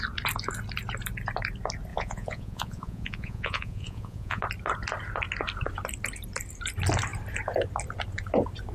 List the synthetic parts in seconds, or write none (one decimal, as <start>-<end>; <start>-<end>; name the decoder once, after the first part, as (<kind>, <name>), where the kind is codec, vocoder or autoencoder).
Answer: 1.9-4.4 (vocoder, Vocos)